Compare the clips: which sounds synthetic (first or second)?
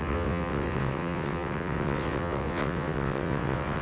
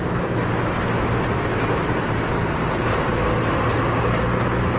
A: first